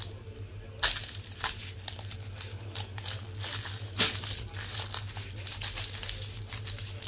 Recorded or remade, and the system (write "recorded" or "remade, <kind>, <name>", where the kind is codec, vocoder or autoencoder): recorded